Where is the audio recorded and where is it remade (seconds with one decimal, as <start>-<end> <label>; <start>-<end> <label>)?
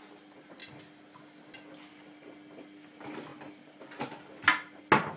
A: 0.0-5.2 recorded